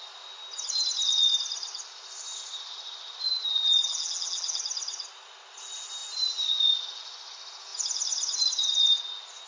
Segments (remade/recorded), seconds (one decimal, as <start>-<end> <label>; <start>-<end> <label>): 0.0-3.5 recorded; 3.5-4.6 remade; 4.6-9.5 recorded